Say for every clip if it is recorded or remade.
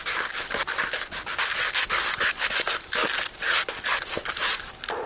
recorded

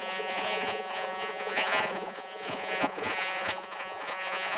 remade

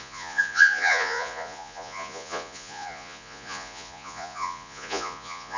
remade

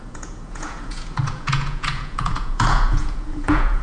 remade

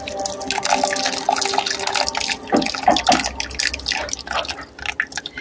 recorded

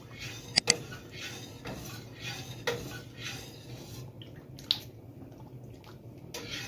recorded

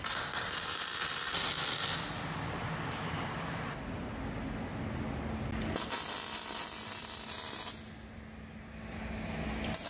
recorded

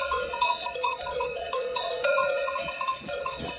remade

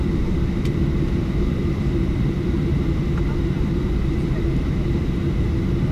recorded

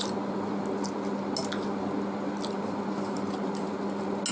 recorded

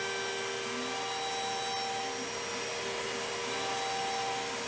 recorded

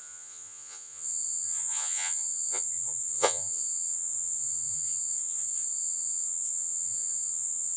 remade